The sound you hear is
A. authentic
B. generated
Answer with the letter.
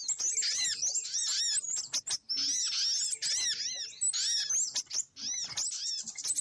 A